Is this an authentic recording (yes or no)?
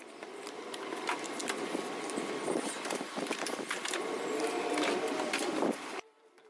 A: no